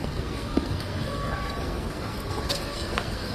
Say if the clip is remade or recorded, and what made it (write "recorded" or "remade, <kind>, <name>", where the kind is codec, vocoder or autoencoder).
remade, codec, SNAC